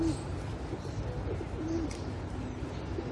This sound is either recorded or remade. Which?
recorded